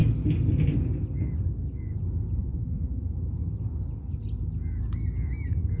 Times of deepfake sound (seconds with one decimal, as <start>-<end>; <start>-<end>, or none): 2.4-3.0